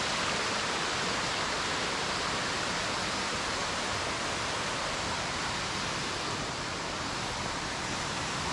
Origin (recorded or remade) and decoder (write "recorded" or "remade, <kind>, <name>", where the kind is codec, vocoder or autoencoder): recorded